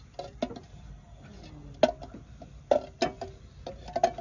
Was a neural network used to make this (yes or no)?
no